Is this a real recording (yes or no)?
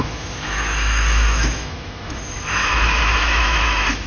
no